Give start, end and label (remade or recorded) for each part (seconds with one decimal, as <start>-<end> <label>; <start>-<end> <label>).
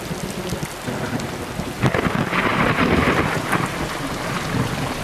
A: 0.0-2.5 recorded; 2.5-3.0 remade; 3.0-5.0 recorded